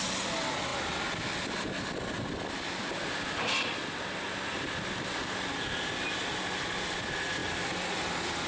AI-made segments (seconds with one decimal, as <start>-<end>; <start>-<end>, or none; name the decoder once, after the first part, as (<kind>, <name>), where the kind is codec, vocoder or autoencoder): none